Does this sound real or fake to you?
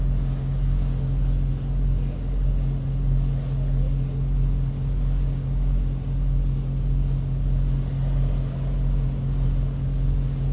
real